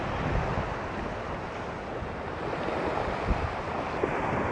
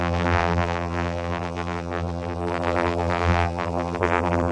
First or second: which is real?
first